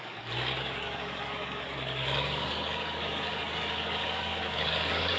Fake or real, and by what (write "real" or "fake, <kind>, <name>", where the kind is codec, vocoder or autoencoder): fake, codec, DAC